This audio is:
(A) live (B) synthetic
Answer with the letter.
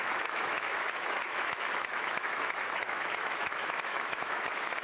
B